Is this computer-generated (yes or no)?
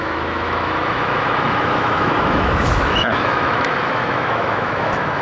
yes